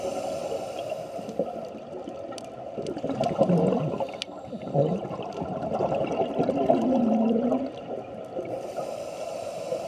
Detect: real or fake real